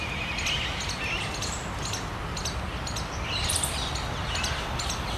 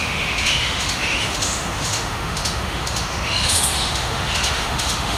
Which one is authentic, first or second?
first